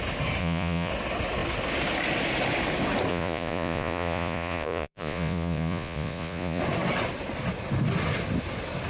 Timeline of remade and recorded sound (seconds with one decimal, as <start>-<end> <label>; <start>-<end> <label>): 0.0-0.4 recorded; 0.4-0.9 remade; 0.9-3.1 recorded; 3.1-6.6 remade; 6.6-8.9 recorded